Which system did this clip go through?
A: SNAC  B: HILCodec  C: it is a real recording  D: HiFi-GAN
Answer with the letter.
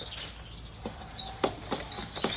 C